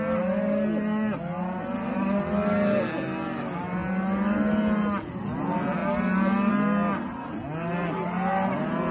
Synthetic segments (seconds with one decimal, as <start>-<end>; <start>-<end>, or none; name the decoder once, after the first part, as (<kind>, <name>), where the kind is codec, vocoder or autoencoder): none